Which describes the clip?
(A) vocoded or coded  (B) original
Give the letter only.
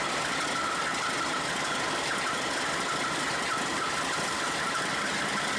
B